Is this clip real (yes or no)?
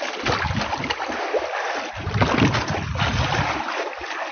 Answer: yes